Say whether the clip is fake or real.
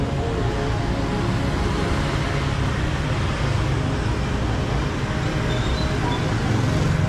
real